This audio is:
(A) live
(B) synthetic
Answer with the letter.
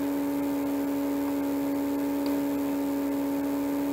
A